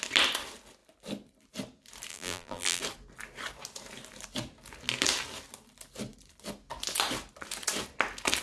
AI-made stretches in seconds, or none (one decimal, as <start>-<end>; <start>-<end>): 2.1-2.8